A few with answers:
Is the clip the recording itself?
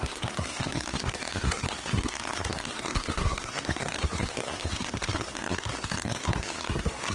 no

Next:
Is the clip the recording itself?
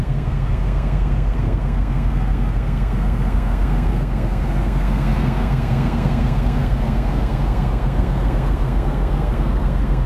no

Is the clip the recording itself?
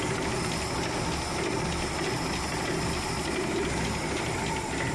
yes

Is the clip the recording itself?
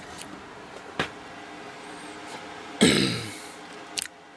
yes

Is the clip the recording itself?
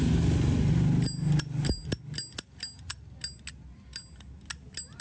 yes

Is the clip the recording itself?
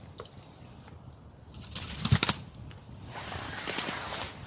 yes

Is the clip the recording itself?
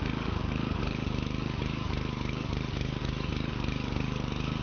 no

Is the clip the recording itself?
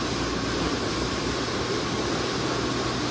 yes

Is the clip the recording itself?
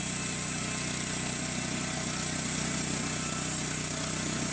yes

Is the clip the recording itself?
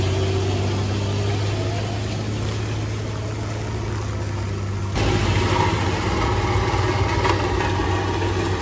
yes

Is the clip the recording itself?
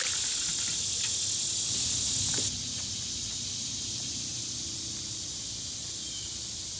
yes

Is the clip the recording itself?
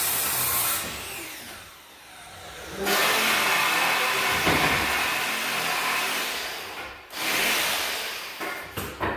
yes